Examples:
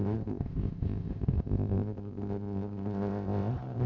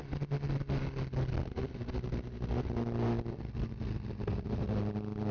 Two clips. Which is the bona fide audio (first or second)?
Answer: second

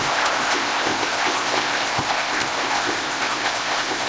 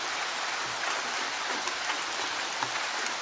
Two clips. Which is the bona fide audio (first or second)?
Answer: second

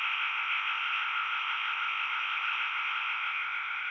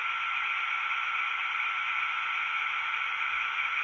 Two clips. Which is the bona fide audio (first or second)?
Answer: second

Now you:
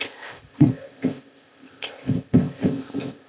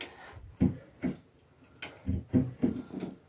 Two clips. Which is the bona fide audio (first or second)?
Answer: second